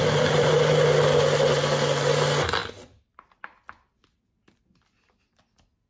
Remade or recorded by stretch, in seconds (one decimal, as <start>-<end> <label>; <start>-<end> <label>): 0.0-5.9 recorded